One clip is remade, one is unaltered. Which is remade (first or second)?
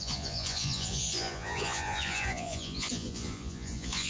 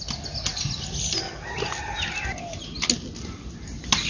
first